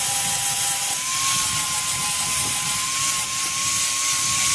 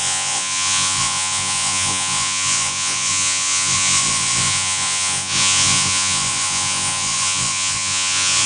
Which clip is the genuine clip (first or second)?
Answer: first